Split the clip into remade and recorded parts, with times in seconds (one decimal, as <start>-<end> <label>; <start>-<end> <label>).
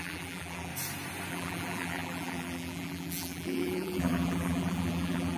0.0-0.7 remade; 0.7-1.3 recorded; 1.3-5.4 remade